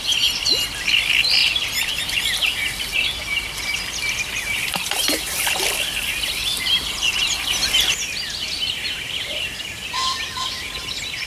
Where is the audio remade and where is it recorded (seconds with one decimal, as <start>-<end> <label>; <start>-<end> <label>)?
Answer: 0.0-1.4 recorded; 1.4-2.0 remade; 2.0-2.9 recorded; 2.9-3.8 remade; 3.8-6.5 recorded; 6.5-7.4 remade; 7.4-11.3 recorded

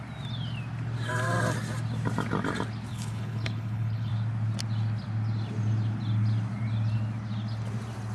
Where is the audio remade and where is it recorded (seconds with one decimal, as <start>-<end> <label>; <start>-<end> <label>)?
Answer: 0.0-2.9 recorded; 2.9-4.1 remade; 4.1-8.1 recorded

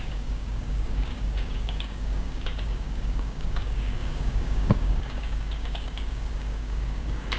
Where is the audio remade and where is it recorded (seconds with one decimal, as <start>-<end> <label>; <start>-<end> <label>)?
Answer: 0.0-7.4 remade